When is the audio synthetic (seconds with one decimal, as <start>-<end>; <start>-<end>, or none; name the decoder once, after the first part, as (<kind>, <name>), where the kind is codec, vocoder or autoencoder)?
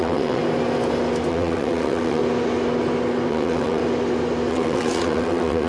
0.0-0.4 (vocoder, WaveNeXt); 1.3-2.2; 3.3-3.8; 4.5-5.7